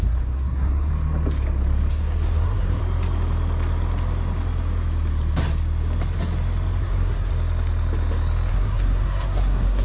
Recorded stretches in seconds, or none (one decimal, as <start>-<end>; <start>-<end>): 0.9-1.9; 2.8-6.8; 7.3-8.5